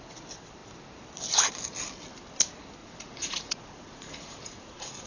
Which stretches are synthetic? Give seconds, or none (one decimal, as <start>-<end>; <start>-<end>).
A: 2.8-5.1